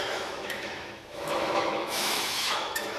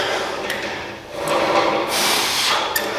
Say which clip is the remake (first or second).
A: first